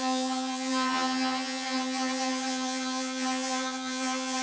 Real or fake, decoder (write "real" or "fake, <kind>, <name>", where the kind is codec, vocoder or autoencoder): fake, vocoder, HiFi-GAN